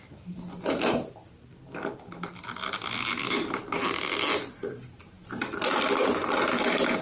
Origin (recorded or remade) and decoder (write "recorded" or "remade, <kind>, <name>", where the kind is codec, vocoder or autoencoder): recorded